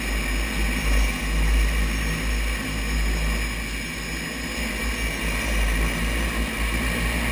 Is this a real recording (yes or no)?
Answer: yes